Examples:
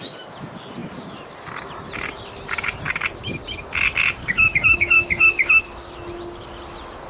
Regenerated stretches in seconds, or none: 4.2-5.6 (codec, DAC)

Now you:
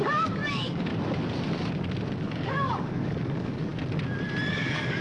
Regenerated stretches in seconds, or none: 0.0-0.9 (codec, DAC); 2.2-3.7; 4.5-5.0

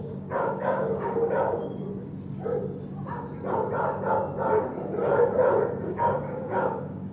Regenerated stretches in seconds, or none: 0.0-1.6 (codec, DAC); 5.9-7.1

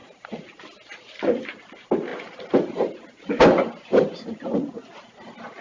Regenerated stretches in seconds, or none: none